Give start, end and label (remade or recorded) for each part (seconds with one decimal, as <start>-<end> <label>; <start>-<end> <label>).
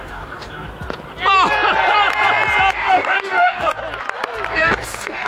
0.0-0.7 remade; 0.7-2.7 recorded; 2.7-3.8 remade; 3.8-4.5 recorded; 4.5-5.3 remade